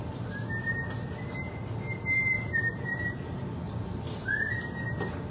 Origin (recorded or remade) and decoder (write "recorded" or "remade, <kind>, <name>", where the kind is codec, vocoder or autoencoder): recorded